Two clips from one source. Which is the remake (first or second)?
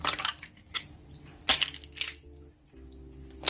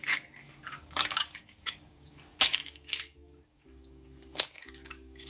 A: second